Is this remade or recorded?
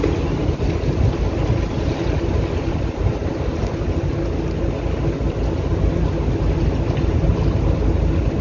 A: recorded